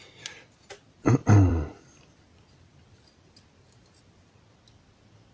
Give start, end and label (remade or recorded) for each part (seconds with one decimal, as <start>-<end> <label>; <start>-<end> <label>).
0.0-1.2 recorded; 1.2-4.4 remade; 4.4-5.3 recorded